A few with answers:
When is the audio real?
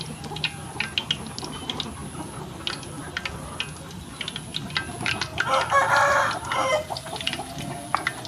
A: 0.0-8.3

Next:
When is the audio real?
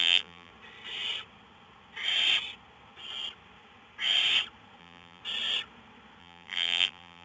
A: 0.5-4.8; 5.2-6.2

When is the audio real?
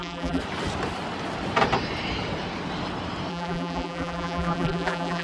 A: 0.4-3.3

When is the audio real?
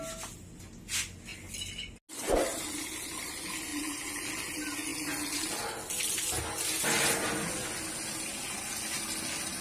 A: 0.0-3.7; 4.3-9.6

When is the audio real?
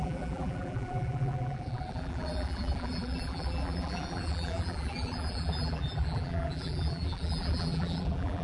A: none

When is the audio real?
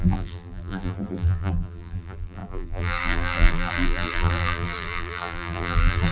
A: none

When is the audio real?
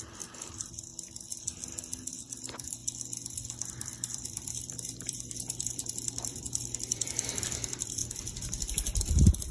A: 0.9-2.2; 2.8-3.7; 8.0-9.0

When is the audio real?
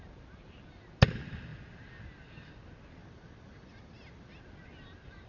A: 0.0-3.0; 4.3-5.3